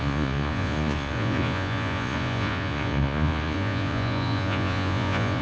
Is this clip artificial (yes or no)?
yes